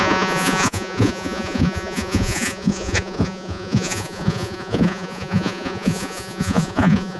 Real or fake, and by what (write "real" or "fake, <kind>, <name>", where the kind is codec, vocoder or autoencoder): fake, vocoder, Vocos